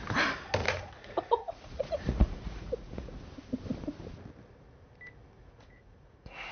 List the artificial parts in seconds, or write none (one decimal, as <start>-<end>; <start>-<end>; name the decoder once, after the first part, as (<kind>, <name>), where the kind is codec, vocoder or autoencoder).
0.6-3.2 (vocoder, Vocos); 5.4-6.5